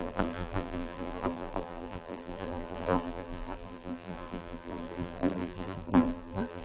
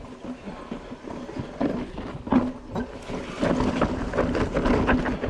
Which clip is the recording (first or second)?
second